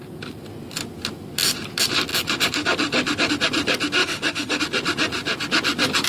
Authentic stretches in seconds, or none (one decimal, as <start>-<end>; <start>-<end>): 0.0-4.0; 4.6-6.1